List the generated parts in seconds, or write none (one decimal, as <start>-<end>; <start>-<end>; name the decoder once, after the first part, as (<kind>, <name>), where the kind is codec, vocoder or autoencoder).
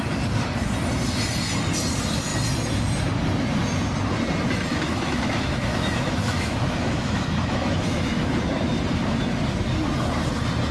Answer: 4.7-8.3 (autoencoder, DAC-VAE)